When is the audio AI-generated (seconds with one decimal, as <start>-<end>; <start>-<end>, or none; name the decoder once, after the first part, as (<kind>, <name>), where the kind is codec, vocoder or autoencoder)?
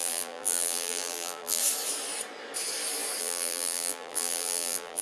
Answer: 0.0-1.6 (vocoder, BigVGAN v2); 3.2-5.0